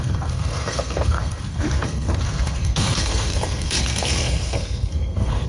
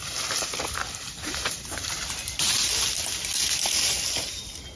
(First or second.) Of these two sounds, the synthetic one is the first